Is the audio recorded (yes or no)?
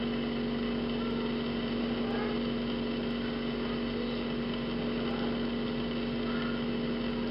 yes